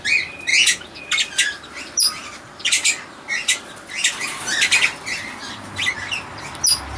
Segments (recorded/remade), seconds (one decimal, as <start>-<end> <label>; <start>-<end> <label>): 0.0-0.5 recorded; 0.5-1.0 remade; 1.0-7.0 recorded